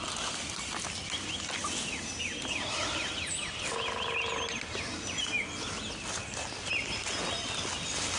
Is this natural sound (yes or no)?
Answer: yes